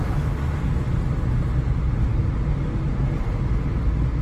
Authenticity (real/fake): real